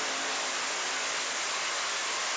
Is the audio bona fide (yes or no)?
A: yes